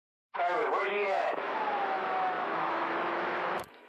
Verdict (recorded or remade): remade